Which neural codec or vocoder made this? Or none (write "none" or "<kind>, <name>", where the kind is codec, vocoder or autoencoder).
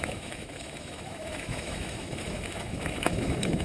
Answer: autoencoder, DAC-VAE